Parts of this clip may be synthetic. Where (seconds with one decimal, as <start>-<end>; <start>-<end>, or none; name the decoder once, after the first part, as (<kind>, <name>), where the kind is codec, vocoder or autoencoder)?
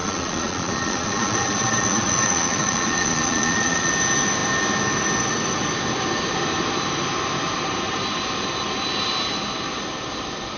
0.0-3.9 (vocoder, Vocos)